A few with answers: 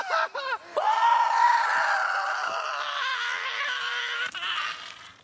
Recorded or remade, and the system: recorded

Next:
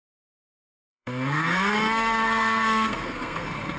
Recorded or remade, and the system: remade, codec, SNAC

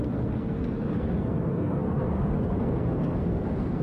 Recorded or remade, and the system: remade, codec, SNAC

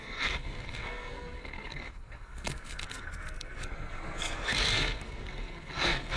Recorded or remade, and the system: remade, codec, SNAC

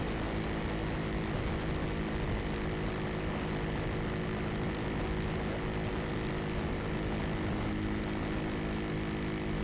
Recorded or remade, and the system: recorded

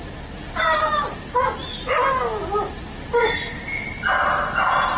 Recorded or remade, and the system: recorded